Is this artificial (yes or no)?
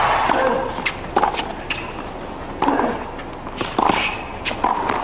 no